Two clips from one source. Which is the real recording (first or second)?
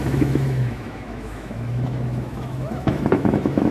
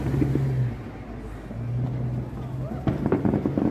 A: second